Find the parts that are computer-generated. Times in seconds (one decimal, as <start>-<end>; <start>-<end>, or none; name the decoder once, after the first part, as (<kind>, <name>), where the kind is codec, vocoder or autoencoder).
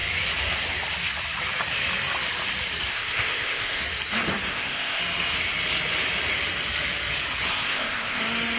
2.9-3.8 (codec, ZipCodec); 4.5-5.0; 7.5-8.2